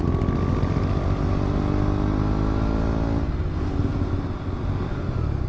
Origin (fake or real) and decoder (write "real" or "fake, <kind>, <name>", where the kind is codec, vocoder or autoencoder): real